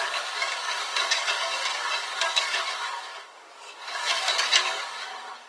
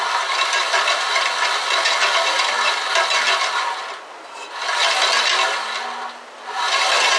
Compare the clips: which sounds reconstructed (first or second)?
first